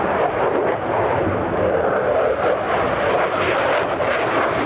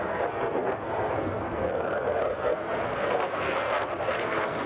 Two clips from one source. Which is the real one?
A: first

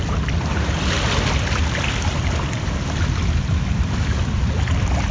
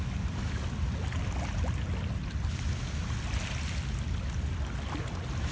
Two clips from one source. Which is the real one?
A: second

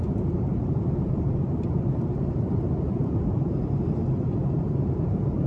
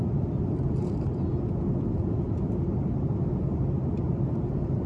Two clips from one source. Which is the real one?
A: second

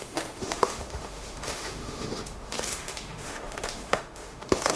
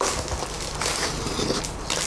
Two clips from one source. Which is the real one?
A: second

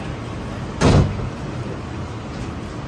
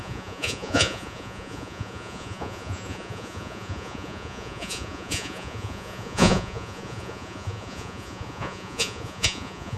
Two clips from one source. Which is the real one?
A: first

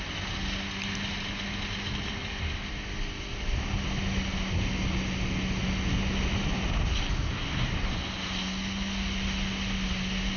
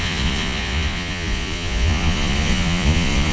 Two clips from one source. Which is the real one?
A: first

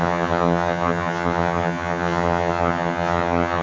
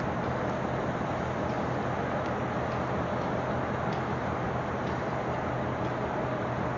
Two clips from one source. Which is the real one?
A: second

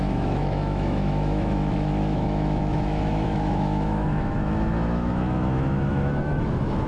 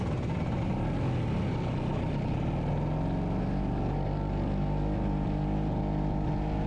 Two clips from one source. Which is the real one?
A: second